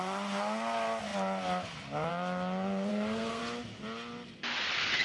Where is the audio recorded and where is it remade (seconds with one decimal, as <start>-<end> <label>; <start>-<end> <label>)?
0.0-2.9 recorded; 2.9-3.4 remade; 3.4-5.0 recorded